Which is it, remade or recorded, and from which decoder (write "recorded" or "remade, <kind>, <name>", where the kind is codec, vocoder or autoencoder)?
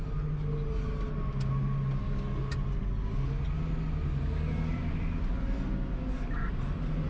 recorded